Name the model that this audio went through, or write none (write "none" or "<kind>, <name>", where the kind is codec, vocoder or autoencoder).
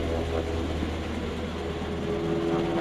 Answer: none